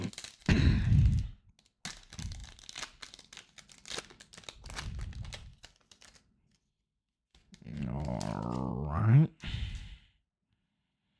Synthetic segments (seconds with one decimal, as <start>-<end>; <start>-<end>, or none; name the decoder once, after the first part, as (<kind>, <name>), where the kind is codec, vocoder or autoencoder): 5.5-8.7 (vocoder, BigVGAN v2)